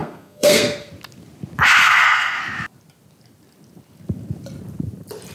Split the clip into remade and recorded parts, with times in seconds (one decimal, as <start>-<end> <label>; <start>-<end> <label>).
0.0-0.9 remade; 0.9-1.8 recorded; 1.8-2.4 remade; 2.4-5.3 recorded